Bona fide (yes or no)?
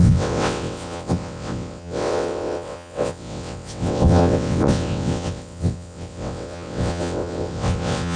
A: no